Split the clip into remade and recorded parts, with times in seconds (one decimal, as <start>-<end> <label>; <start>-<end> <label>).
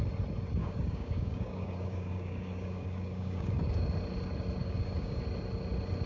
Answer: 0.0-0.6 recorded; 0.6-3.9 remade; 3.9-4.6 recorded; 4.6-5.2 remade; 5.2-6.1 recorded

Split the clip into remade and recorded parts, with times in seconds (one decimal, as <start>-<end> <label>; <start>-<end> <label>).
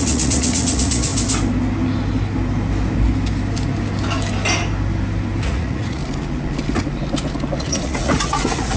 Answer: 0.0-1.1 remade; 1.1-5.4 recorded; 5.4-6.0 remade; 6.0-7.6 recorded; 7.6-8.8 remade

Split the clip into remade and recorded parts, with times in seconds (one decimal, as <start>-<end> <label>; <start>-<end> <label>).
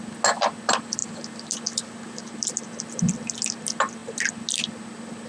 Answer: 0.0-5.3 recorded